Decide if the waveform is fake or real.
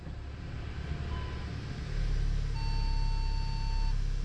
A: real